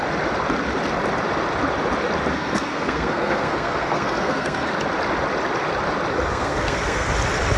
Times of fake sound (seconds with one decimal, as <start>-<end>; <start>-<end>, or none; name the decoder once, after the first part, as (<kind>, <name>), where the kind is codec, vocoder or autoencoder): 2.3-4.7 (codec, SNAC); 6.3-7.1